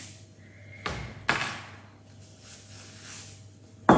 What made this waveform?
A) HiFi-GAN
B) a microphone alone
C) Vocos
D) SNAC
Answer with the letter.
B